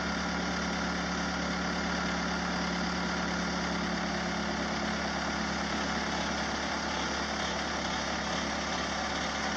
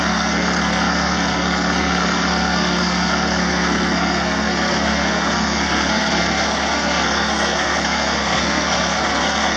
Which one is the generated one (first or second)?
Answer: second